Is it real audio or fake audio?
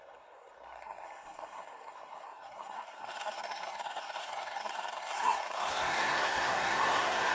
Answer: fake